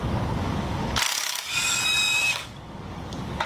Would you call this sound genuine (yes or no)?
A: no